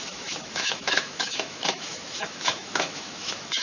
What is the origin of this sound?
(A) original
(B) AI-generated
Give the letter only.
B